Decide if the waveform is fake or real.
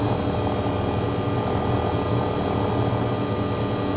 real